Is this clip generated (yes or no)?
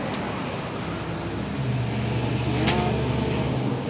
no